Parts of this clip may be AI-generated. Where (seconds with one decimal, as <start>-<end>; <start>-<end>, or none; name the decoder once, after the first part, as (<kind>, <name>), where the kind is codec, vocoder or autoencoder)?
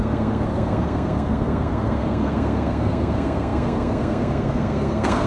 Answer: 0.0-5.3 (codec, SNAC)